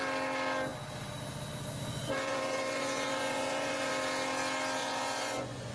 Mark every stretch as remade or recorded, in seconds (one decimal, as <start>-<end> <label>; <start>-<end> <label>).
0.0-1.9 recorded; 1.9-3.9 remade; 3.9-4.8 recorded; 4.8-5.7 remade